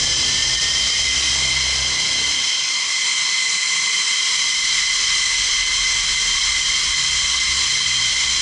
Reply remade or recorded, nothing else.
recorded